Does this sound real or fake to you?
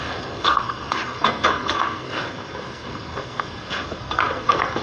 fake